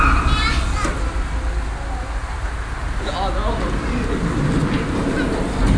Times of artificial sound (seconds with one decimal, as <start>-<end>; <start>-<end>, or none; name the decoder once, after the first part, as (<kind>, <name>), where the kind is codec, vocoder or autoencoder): none